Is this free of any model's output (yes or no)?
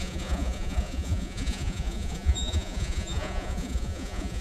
no